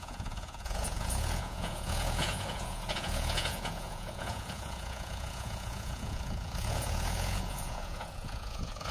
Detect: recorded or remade remade